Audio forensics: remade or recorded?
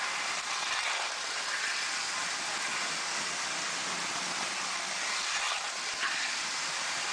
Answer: recorded